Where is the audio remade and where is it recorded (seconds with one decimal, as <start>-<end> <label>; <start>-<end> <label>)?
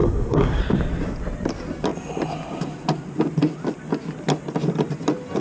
0.0-0.6 remade; 0.6-5.4 recorded